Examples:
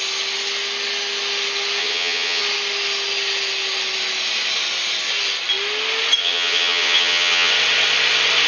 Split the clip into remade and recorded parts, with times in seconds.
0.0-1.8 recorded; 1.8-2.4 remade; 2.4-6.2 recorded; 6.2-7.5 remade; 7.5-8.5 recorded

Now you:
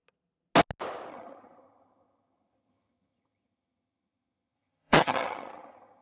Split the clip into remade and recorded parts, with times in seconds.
0.0-1.1 recorded; 1.1-6.0 remade